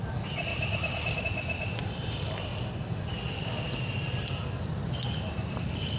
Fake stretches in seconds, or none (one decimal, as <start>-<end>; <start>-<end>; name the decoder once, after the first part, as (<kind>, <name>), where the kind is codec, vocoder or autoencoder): 0.5-1.2 (vocoder, BigVGAN v2); 2.5-3.6